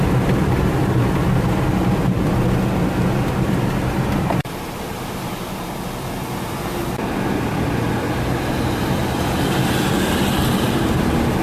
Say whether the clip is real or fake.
real